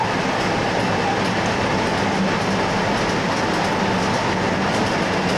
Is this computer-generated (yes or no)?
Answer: no